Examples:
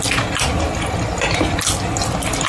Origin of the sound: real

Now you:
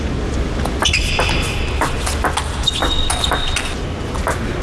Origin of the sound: real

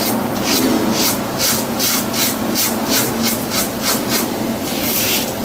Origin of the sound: real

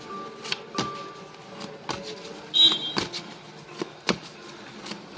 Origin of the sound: real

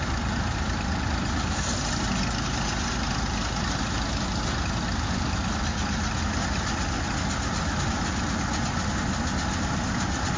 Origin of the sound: real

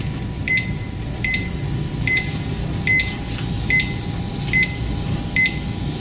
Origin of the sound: real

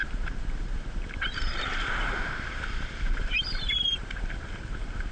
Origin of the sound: fake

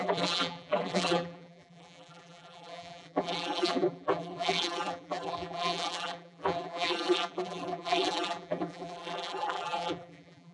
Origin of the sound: fake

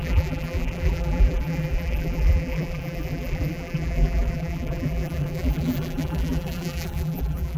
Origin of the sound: fake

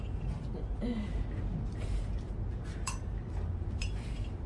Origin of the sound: fake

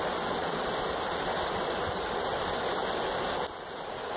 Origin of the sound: real